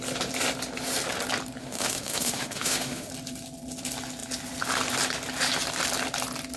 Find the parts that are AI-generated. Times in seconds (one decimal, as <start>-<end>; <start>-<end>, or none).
1.6-3.1